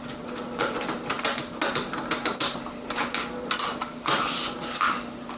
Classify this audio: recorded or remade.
recorded